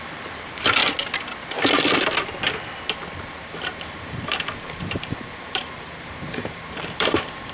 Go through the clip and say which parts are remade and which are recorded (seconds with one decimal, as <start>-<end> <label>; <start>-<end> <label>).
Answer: 0.0-0.8 remade; 0.8-3.2 recorded; 3.2-7.5 remade